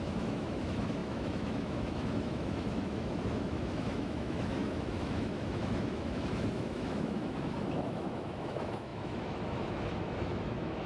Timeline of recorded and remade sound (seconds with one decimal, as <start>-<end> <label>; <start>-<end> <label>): 0.0-10.9 remade